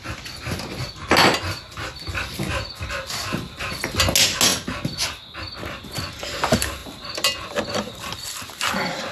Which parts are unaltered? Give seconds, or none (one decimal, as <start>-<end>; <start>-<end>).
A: 0.0-9.1